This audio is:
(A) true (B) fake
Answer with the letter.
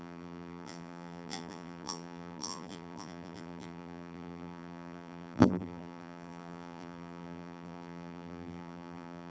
B